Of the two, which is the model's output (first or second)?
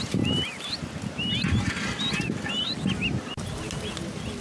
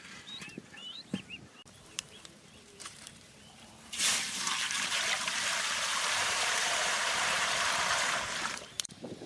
second